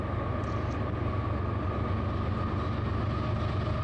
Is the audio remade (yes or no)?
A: no